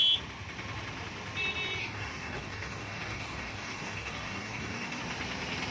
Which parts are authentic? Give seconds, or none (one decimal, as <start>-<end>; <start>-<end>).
0.0-1.8; 5.0-5.7